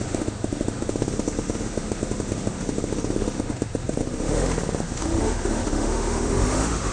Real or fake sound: fake